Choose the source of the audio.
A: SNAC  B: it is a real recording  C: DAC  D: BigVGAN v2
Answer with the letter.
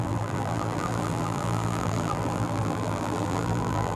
D